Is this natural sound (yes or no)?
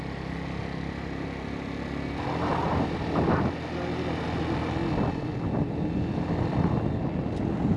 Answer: yes